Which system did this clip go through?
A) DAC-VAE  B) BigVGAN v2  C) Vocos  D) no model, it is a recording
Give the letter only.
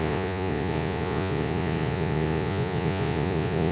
C